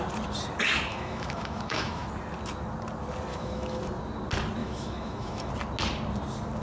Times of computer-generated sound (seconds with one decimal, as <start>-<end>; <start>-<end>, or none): 0.9-2.1; 3.3-3.8; 4.6-5.5